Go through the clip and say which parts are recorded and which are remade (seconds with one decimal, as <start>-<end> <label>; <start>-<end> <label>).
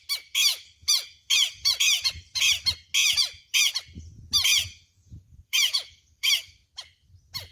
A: 0.0-0.8 recorded; 0.8-2.5 remade; 2.5-3.0 recorded; 3.0-3.7 remade; 3.7-4.5 recorded; 4.5-6.3 remade; 6.3-7.5 recorded